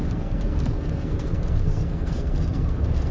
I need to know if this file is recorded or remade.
remade